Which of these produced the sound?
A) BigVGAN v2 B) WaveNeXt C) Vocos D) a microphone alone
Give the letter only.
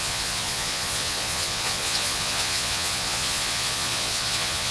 C